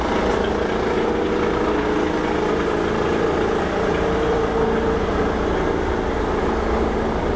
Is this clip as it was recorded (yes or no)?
yes